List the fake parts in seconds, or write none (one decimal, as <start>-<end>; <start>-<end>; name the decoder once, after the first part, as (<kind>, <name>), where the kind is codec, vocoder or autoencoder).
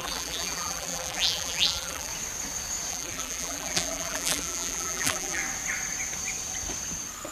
0.0-2.1 (vocoder, BigVGAN v2); 2.9-5.4